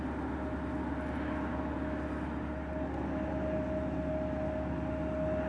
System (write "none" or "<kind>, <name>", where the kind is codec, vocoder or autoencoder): none